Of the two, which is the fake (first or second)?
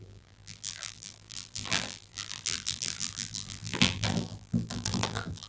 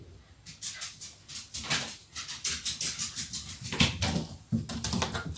first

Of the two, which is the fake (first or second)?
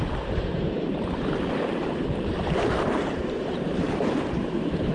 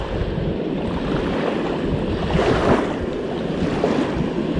first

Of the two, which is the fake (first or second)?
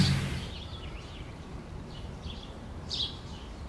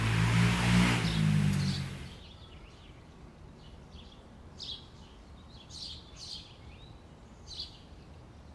first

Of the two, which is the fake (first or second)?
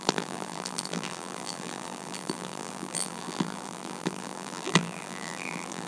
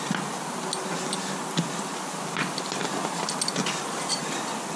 first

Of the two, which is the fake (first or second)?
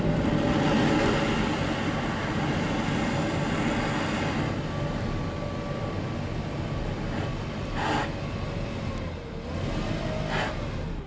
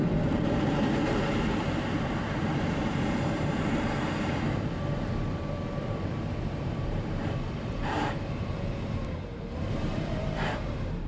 second